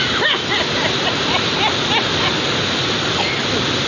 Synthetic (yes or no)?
no